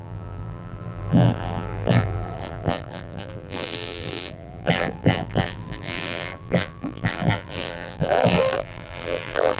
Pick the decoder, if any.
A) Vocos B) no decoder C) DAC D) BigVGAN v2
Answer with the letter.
D